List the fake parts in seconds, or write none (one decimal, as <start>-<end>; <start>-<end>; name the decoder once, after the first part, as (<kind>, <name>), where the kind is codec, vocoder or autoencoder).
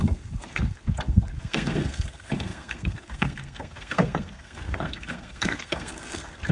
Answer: 0.0-6.5 (codec, SNAC)